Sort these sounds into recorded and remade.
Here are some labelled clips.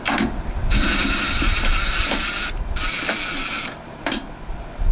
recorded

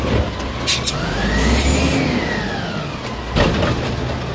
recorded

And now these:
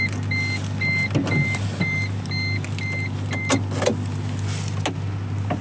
recorded